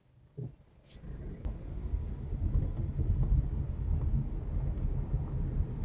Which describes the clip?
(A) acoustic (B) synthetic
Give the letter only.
A